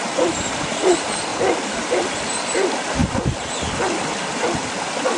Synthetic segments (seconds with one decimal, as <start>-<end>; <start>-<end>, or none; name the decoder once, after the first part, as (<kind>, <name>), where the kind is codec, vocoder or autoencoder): none